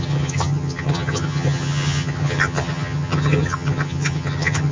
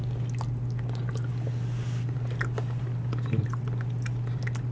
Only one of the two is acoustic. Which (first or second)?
second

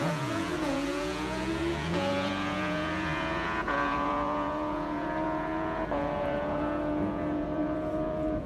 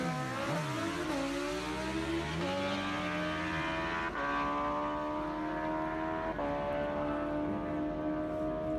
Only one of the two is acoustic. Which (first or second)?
second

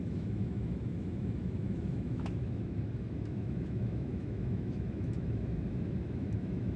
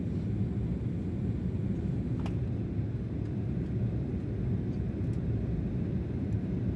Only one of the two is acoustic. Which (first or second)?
second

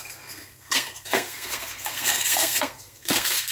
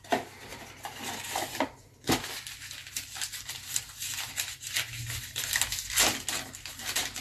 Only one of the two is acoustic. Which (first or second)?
second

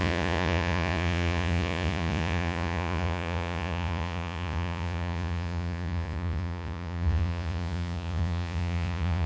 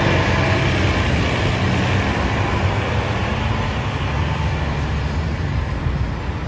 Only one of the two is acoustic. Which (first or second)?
second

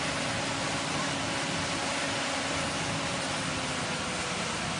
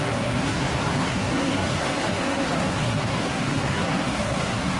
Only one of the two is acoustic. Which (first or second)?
first